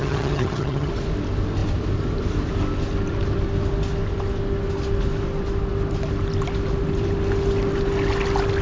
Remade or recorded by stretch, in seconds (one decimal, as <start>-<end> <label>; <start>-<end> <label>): 0.0-0.9 remade; 0.9-8.6 recorded